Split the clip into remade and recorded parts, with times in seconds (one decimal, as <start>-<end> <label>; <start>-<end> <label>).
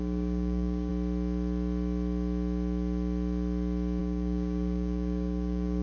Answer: 0.0-0.9 remade; 0.9-4.0 recorded; 4.0-5.8 remade